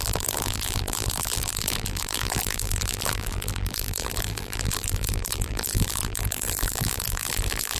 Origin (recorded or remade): remade